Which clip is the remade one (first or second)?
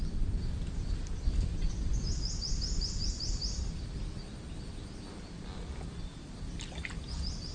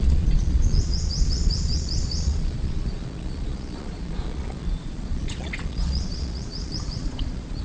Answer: second